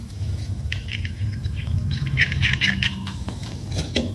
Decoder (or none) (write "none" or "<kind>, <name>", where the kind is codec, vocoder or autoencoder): autoencoder, DAC-VAE